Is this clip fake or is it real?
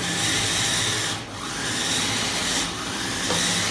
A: real